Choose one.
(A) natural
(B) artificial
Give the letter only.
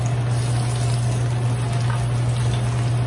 A